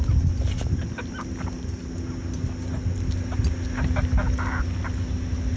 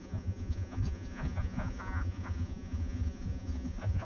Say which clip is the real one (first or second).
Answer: first